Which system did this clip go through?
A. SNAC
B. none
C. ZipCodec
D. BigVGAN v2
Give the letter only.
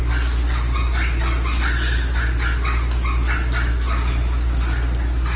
B